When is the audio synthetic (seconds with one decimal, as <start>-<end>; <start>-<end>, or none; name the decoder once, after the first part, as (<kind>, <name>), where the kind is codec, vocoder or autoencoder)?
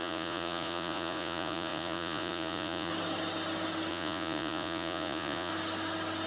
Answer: 0.0-2.9 (vocoder, Vocos); 3.9-5.5